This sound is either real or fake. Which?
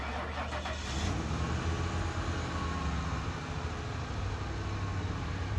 real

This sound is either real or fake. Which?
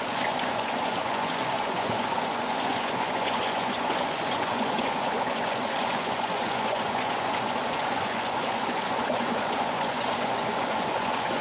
fake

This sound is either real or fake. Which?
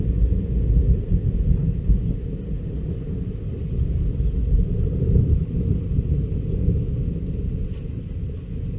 real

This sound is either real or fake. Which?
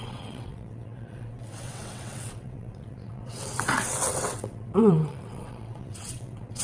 fake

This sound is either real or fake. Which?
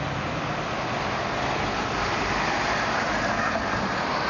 real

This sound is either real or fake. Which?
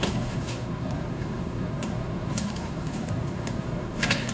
fake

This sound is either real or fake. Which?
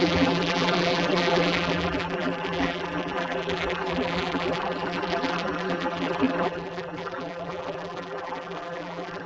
fake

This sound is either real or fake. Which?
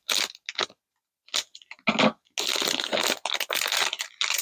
real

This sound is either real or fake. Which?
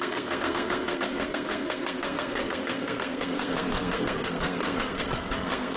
fake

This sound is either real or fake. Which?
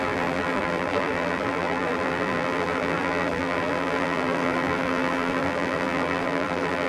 fake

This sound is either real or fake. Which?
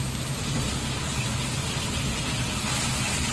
real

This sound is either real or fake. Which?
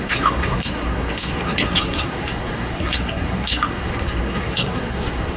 fake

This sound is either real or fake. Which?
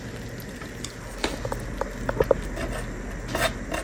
real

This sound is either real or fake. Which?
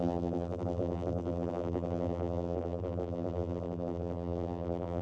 fake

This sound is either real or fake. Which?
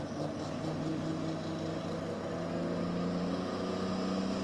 real